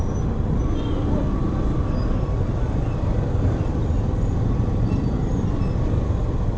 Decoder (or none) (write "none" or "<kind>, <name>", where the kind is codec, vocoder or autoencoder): none